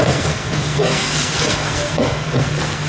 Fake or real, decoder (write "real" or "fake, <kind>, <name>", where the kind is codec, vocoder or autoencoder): fake, codec, SNAC